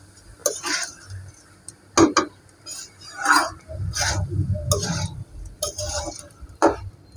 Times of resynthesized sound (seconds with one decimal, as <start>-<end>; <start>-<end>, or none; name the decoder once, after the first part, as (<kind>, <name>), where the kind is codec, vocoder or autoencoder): none